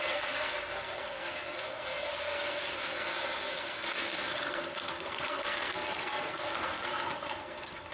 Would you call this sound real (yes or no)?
no